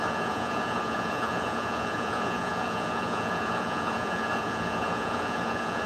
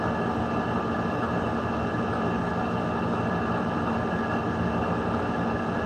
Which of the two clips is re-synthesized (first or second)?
first